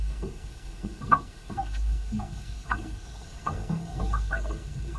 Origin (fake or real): fake